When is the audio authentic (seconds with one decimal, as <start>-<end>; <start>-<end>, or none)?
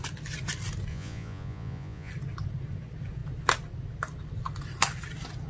0.0-0.9; 2.1-5.5